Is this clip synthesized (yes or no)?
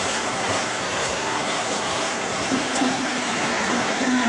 yes